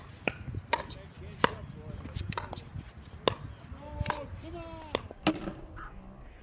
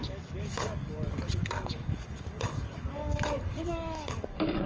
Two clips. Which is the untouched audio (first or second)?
first